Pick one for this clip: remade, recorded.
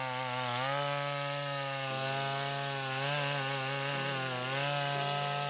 recorded